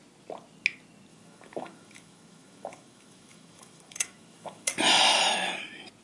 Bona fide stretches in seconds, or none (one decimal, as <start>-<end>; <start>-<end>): 0.0-1.1; 4.7-6.0

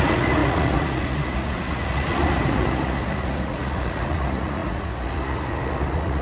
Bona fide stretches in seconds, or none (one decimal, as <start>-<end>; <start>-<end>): none

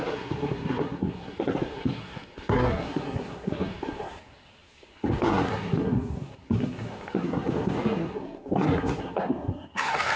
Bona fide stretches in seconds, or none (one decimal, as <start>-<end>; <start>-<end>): none

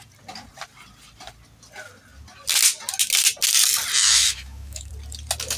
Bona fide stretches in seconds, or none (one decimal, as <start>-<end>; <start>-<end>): 0.0-4.0; 4.9-5.6